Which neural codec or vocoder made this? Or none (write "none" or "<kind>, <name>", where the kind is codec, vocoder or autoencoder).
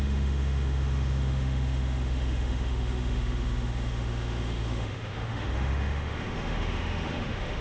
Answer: autoencoder, DAC-VAE